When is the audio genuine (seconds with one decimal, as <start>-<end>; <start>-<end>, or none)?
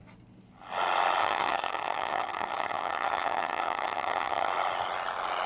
0.0-1.2; 4.5-5.5